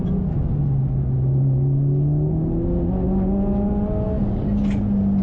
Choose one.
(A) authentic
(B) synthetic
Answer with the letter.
A